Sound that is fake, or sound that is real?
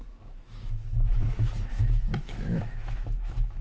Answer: fake